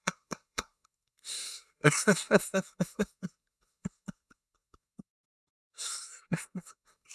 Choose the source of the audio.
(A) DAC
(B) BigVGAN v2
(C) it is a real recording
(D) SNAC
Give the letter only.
D